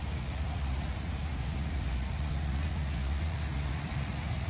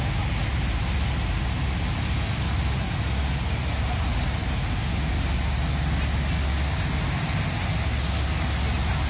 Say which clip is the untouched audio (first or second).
second